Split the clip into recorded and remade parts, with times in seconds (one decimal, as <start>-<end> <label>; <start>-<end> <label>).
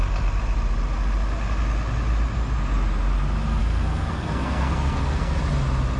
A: 0.0-3.6 recorded; 3.6-5.4 remade; 5.4-6.0 recorded